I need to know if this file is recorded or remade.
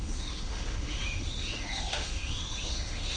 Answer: remade